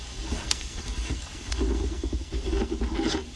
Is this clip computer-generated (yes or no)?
yes